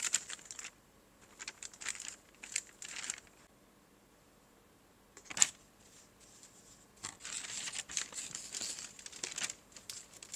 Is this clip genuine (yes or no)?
yes